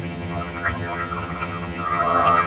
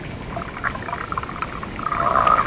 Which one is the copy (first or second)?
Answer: first